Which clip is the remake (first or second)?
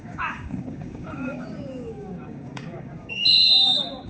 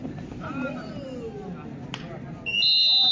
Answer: first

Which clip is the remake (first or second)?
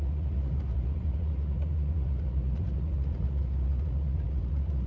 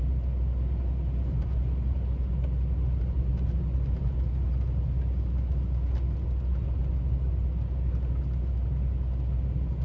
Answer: first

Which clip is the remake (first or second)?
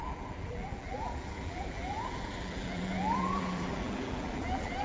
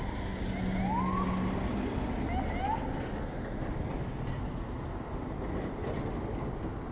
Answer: first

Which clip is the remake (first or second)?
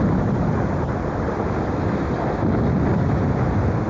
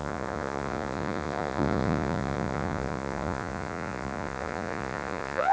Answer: second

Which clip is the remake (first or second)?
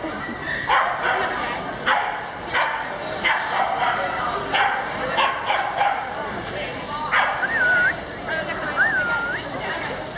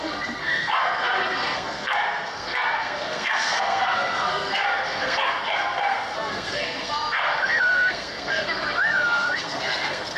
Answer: second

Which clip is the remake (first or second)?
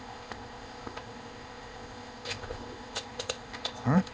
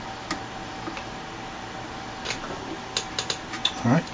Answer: first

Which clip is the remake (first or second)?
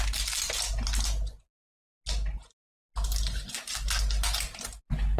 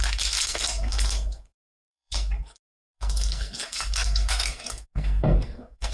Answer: second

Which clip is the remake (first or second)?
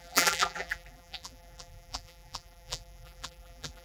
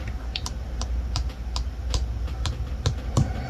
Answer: first